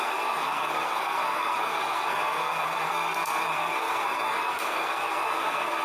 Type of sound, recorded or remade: remade